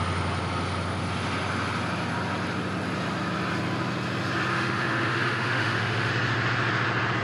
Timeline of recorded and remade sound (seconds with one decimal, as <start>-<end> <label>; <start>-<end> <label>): 0.0-4.5 recorded; 4.5-6.1 remade; 6.1-7.2 recorded